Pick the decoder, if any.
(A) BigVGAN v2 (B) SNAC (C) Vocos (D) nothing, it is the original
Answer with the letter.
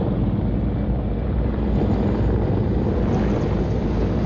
D